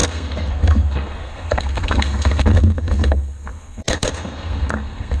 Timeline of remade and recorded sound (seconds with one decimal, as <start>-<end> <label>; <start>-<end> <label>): 0.0-5.2 remade